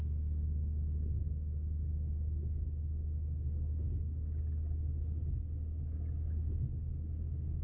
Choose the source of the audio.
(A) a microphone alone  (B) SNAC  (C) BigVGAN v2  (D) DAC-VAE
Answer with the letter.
A